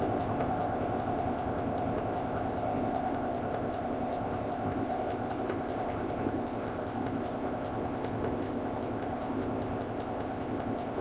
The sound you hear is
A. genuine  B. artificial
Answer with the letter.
B